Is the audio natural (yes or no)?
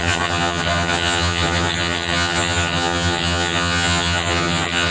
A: no